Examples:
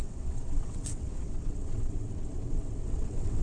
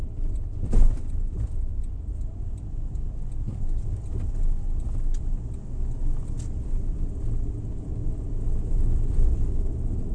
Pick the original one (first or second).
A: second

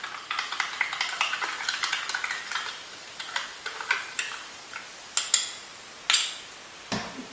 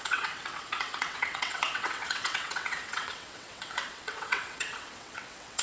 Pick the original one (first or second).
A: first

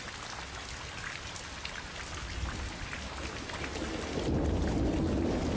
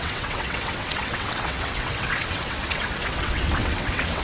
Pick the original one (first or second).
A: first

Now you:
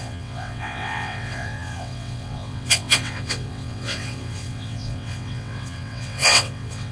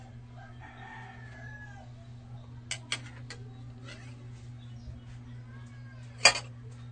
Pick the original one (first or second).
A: second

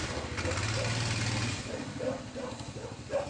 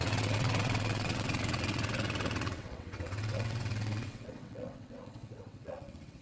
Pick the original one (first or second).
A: first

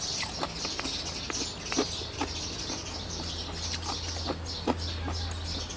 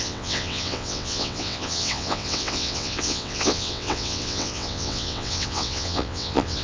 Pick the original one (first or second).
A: first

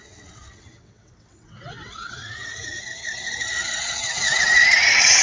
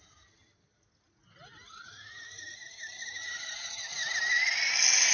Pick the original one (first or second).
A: second